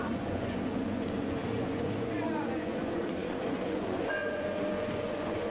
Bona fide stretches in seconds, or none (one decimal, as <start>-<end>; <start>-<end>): none